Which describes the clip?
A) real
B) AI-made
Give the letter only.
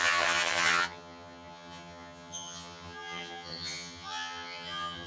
B